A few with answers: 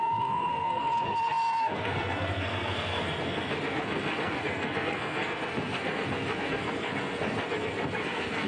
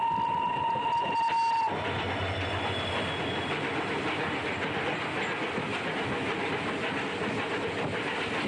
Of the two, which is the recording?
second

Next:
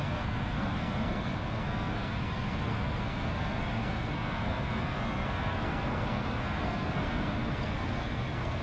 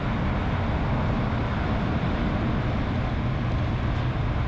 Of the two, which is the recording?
second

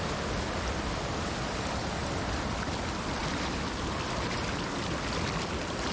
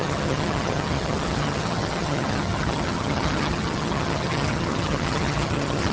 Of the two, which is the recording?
first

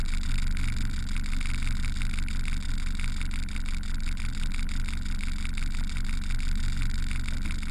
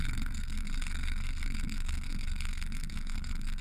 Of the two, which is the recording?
first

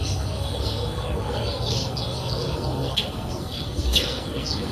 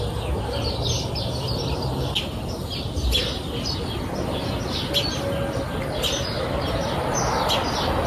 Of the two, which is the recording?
second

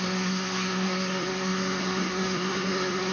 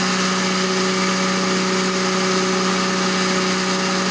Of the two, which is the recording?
second